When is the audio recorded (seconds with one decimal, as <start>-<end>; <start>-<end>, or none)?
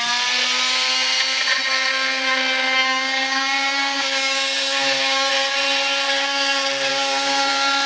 0.0-2.8; 5.3-6.9; 7.5-7.9